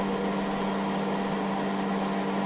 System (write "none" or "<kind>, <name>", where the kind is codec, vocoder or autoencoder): none